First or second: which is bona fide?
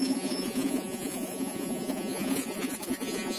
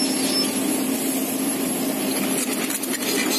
second